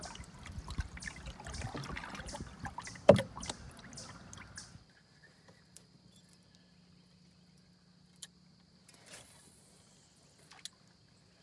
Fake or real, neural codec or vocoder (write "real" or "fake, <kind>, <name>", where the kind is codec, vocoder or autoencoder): real